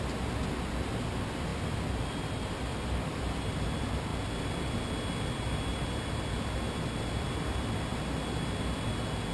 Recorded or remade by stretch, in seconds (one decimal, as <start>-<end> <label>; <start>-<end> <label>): 0.0-1.5 recorded; 1.5-3.2 remade; 3.2-9.3 recorded